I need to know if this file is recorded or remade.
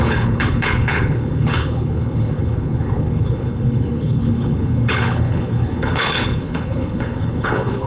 remade